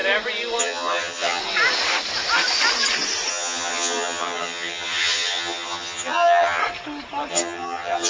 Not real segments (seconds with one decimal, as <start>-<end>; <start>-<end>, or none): 0.6-1.4; 3.3-6.6; 7.3-8.1

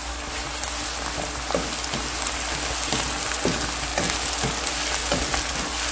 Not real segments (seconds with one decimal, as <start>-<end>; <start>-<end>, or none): none

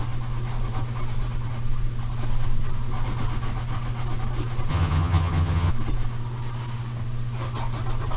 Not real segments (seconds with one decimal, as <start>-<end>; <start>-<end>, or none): 4.7-5.7

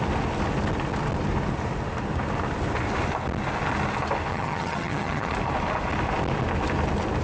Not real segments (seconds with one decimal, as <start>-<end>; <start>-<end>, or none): 4.3-5.3

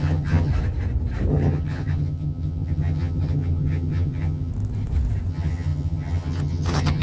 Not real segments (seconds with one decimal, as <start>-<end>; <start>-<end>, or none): 0.0-0.5; 1.3-4.5; 5.3-7.0

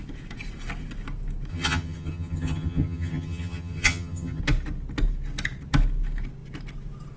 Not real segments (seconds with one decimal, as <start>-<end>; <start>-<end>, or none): 1.5-4.4